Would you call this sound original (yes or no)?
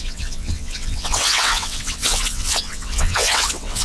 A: no